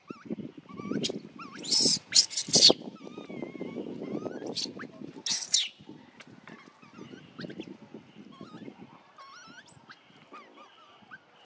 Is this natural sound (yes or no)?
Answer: yes